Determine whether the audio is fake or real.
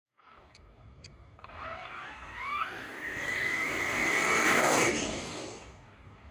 fake